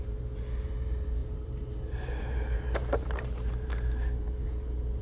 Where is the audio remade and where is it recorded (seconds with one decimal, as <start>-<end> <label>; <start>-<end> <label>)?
0.0-5.0 remade